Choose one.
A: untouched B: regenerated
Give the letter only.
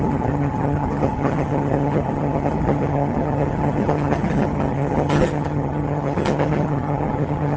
B